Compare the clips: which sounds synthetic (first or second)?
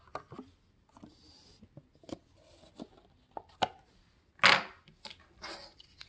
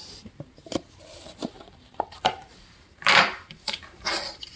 second